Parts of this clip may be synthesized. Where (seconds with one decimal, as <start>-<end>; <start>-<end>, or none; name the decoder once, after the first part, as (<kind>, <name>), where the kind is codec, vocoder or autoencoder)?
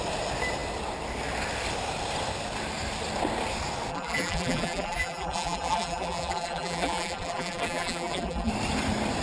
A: 3.9-8.5 (vocoder, BigVGAN v2)